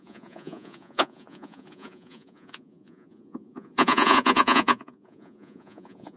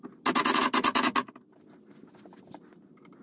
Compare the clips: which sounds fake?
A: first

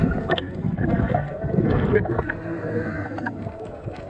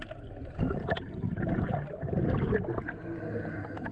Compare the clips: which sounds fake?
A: first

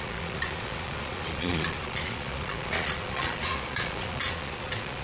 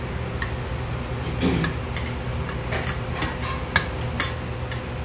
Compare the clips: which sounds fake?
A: first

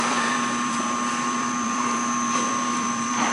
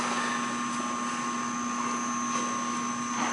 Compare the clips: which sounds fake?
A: first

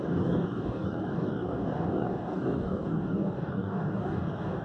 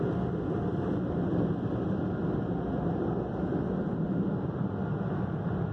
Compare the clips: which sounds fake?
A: first